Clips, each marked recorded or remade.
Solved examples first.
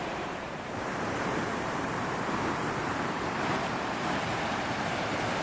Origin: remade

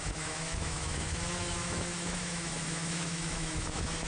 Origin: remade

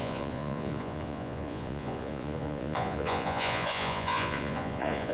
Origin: remade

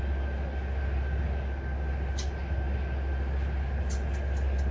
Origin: recorded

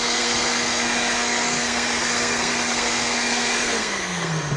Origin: remade